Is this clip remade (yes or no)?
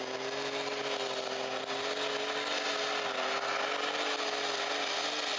no